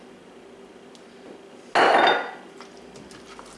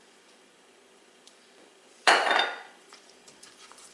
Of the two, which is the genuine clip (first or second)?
first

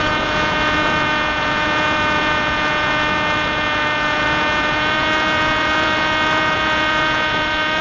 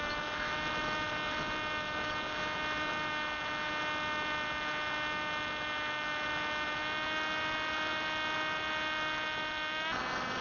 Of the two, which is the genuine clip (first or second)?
second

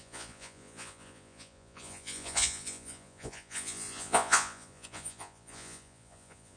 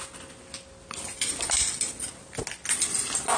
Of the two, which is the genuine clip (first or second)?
second